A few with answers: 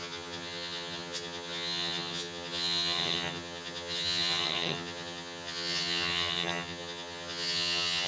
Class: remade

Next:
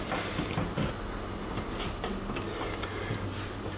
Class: recorded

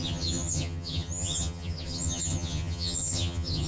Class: remade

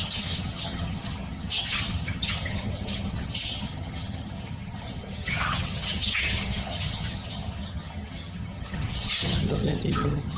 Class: remade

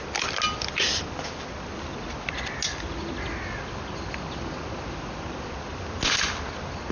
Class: recorded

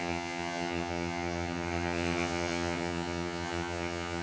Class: remade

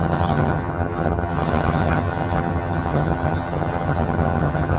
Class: remade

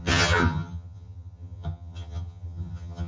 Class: remade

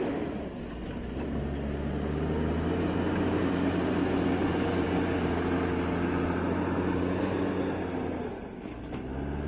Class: recorded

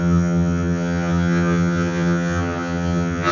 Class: remade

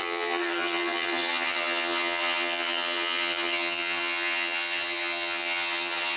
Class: remade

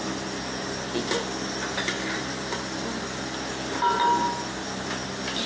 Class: recorded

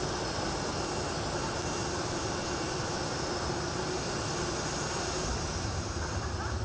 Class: recorded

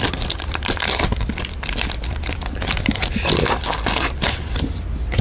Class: recorded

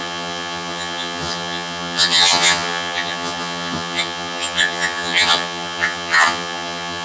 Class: remade